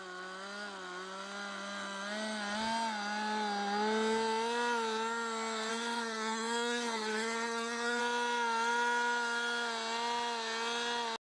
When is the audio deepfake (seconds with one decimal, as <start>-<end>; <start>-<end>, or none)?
5.7-8.0